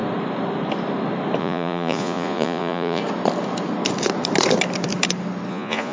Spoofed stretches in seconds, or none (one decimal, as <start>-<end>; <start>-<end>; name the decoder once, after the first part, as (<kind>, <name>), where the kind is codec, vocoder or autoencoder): 1.4-3.0 (vocoder, Vocos); 5.5-5.9